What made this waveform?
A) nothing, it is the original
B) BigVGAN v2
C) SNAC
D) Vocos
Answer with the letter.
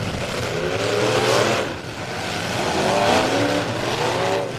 A